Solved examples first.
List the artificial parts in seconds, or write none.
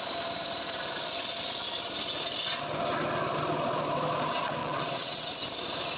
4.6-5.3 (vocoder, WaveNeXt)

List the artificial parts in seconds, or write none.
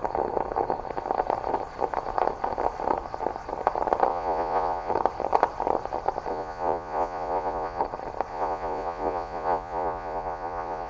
4.1-4.9 (vocoder, Vocos); 6.3-7.8; 8.3-10.9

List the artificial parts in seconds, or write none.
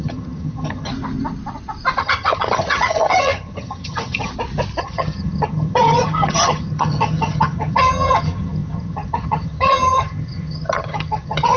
0.0-0.9 (vocoder, HiFi-GAN); 2.0-4.3; 4.8-11.6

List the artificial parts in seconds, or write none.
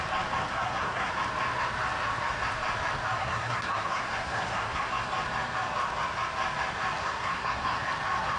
0.5-1.1 (codec, SNAC); 3.2-4.9; 7.0-7.9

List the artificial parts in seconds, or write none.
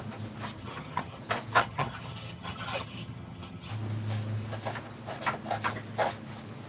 0.6-1.2 (vocoder, HiFi-GAN); 1.6-3.7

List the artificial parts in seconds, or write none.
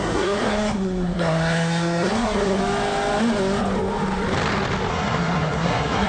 0.0-2.6 (codec, SNAC); 4.9-6.1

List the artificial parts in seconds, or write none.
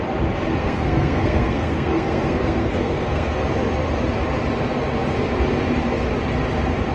0.6-3.4 (codec, SNAC)